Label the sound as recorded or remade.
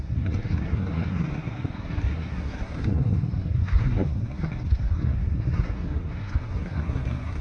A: remade